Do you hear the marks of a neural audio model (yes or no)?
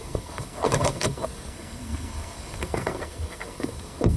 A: yes